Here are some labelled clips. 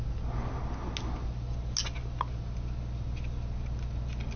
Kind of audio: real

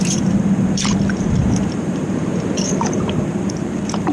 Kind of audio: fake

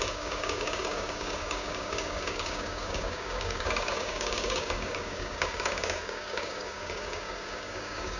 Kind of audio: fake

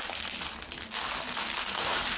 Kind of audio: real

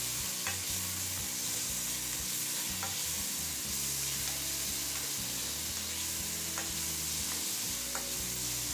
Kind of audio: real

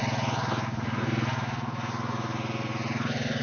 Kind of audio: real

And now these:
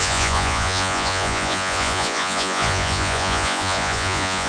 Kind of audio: fake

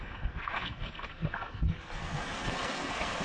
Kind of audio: fake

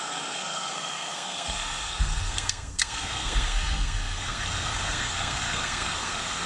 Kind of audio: fake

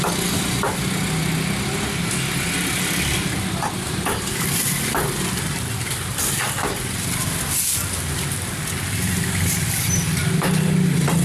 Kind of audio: real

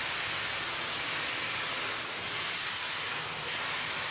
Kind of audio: real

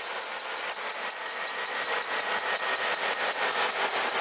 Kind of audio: real